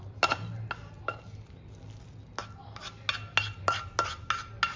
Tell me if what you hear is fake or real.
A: real